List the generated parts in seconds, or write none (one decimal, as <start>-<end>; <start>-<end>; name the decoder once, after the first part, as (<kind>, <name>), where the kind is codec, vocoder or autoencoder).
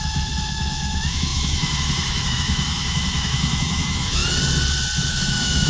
0.0-4.2 (autoencoder, DAC-VAE); 5.1-5.7